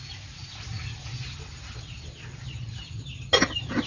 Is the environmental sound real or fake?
real